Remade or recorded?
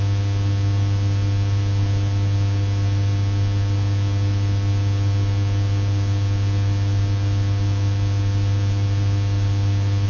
recorded